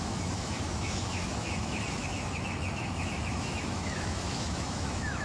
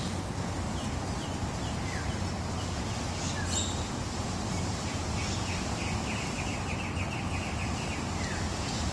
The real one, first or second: second